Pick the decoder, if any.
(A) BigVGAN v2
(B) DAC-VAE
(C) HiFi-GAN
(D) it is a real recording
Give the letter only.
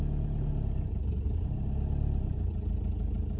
D